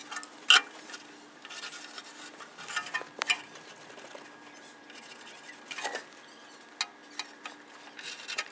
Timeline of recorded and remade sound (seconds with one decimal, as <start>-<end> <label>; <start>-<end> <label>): 0.0-8.5 recorded